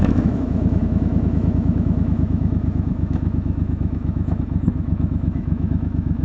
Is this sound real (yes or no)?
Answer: no